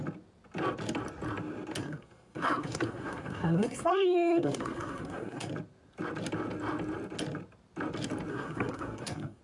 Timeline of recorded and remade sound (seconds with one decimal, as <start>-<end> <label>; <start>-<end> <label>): 0.0-1.8 recorded; 1.8-5.5 remade; 5.5-8.3 recorded; 8.3-9.4 remade